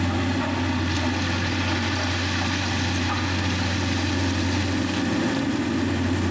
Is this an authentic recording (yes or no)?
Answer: yes